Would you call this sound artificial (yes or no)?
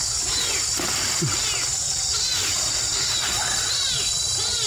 no